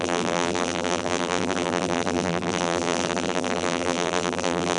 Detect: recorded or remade remade